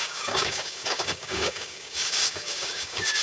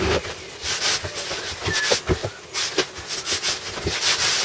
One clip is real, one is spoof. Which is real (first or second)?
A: second